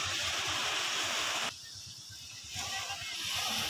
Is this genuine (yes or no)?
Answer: yes